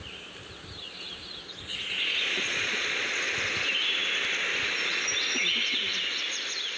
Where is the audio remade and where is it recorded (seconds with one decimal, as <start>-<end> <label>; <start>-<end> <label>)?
0.0-1.7 recorded; 1.7-3.2 remade; 3.2-6.8 recorded

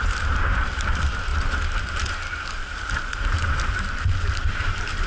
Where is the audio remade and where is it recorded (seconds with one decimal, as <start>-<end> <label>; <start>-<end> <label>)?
0.0-5.1 remade

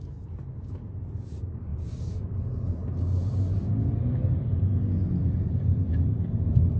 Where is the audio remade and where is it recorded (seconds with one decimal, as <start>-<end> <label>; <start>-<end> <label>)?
0.0-6.8 recorded